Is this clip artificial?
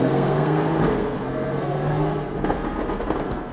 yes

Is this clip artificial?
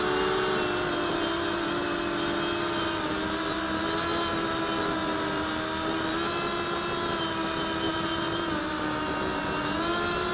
no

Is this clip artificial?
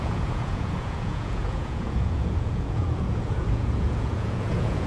yes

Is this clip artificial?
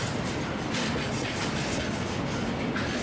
no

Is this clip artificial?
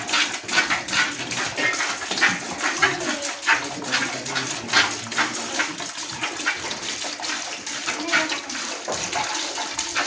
no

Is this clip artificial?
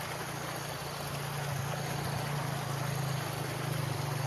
no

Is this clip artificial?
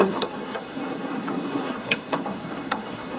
yes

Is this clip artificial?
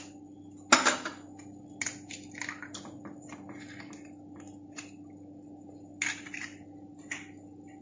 no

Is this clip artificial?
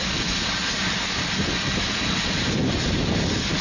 no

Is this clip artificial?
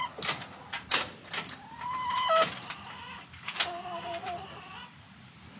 no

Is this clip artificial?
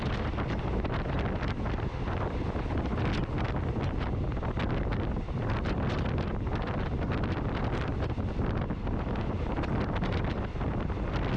no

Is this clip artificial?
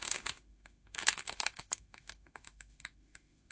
yes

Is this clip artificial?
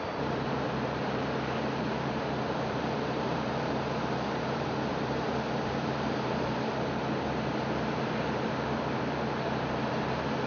yes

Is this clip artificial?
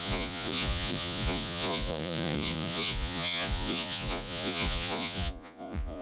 yes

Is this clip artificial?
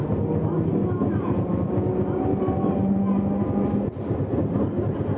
no